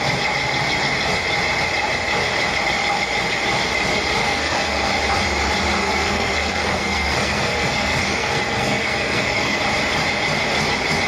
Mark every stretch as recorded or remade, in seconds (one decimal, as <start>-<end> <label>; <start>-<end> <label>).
0.0-4.2 recorded; 4.2-4.9 remade; 4.9-5.8 recorded; 5.8-9.6 remade; 9.6-11.1 recorded